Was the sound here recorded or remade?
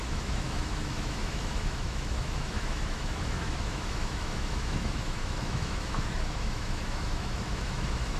remade